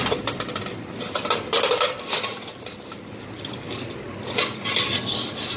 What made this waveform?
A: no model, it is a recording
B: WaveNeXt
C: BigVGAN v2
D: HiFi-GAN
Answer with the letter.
A